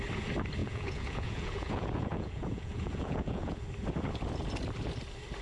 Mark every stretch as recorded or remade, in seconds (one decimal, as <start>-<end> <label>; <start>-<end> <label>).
0.0-0.6 recorded; 0.6-3.6 remade; 3.6-5.4 recorded